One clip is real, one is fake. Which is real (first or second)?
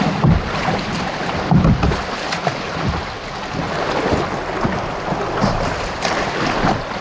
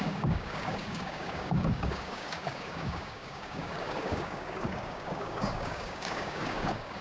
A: first